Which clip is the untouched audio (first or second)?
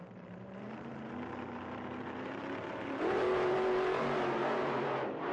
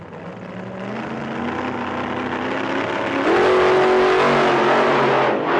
second